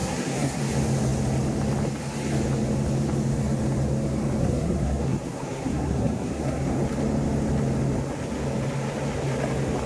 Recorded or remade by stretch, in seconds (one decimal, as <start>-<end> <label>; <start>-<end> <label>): 0.0-0.6 remade; 0.6-4.4 recorded; 4.4-6.6 remade; 6.6-9.9 recorded